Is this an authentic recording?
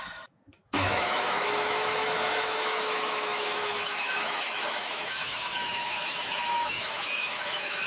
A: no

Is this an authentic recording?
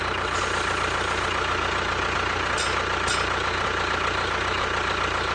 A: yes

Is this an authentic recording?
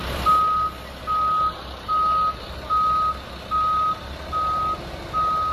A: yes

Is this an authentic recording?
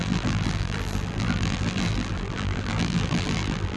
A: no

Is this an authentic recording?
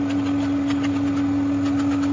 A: yes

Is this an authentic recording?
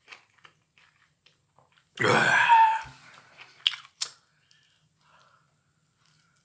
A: yes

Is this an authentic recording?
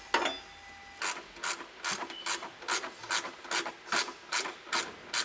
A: yes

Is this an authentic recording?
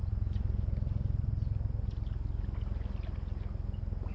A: yes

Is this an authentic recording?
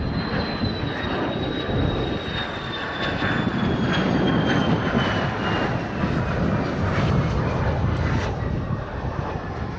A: yes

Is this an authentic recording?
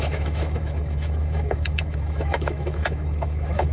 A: no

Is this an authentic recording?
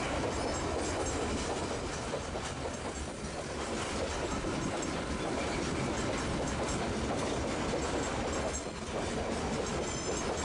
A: yes